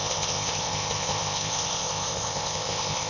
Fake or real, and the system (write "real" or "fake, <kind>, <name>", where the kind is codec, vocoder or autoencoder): fake, codec, ZipCodec